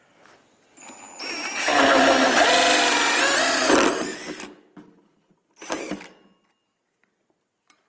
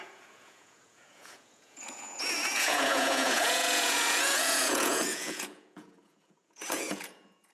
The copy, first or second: second